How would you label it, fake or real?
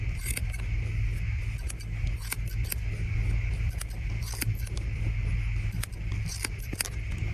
real